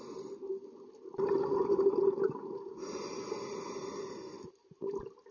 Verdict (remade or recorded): recorded